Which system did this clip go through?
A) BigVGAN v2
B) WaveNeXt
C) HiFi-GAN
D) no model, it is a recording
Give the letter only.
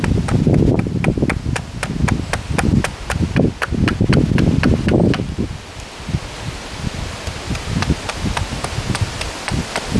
D